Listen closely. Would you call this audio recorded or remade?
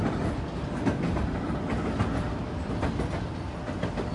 recorded